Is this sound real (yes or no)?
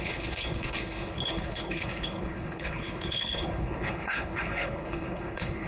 no